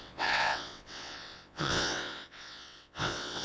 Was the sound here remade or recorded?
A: remade